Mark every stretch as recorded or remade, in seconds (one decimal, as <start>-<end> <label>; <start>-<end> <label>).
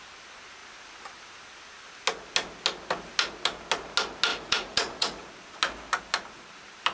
0.0-4.3 recorded; 4.3-5.3 remade; 5.3-6.9 recorded